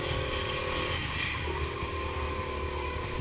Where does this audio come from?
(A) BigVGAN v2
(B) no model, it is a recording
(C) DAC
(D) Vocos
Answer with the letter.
C